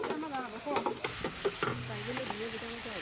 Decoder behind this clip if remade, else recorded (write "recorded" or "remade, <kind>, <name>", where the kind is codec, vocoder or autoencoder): recorded